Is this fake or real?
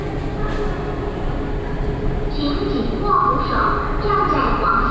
real